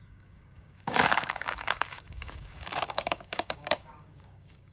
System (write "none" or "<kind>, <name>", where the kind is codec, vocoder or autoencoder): codec, DAC